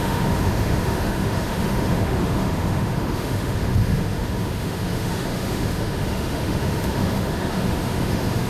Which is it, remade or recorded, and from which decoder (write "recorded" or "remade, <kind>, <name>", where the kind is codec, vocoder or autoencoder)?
remade, autoencoder, DAC-VAE